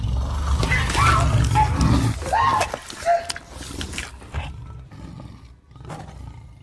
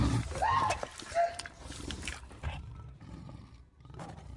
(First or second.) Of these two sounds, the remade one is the second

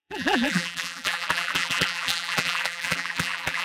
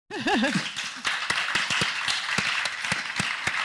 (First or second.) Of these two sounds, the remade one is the first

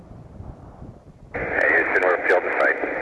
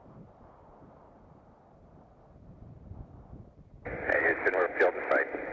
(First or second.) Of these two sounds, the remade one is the second